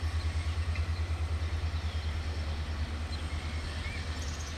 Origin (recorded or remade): recorded